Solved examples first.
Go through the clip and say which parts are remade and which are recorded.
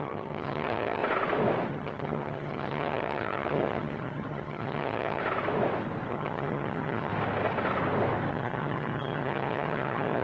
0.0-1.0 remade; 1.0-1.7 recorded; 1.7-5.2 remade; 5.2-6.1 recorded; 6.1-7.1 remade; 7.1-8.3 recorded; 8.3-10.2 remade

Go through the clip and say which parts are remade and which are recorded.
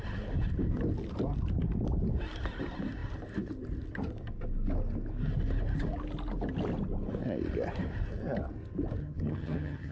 0.0-9.0 recorded; 9.0-9.9 remade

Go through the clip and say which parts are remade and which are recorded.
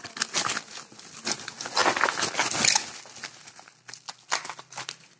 0.0-5.2 recorded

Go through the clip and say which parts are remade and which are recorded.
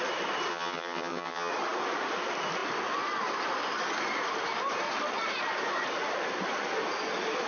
0.0-0.5 recorded; 0.5-1.5 remade; 1.5-7.5 recorded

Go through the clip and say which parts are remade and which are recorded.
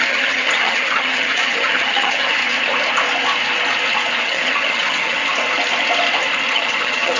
0.0-2.4 remade; 2.4-4.2 recorded; 4.2-5.2 remade; 5.2-6.5 recorded; 6.5-7.2 remade